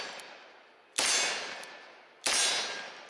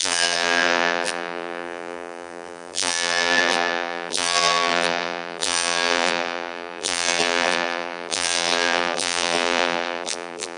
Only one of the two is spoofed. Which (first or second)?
second